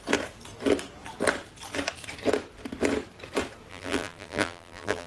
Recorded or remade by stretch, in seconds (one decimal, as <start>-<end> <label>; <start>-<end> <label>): 0.0-3.7 recorded; 3.7-5.1 remade